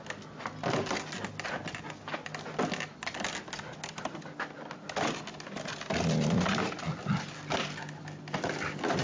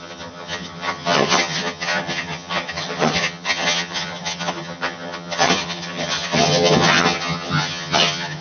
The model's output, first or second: second